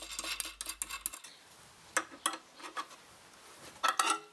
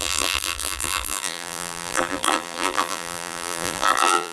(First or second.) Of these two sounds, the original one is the first